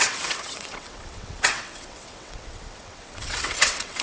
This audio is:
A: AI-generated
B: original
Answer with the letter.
A